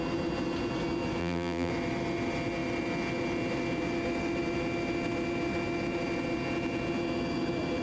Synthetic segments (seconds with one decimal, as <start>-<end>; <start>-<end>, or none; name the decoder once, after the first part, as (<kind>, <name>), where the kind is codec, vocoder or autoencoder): 1.2-1.7 (vocoder, BigVGAN v2)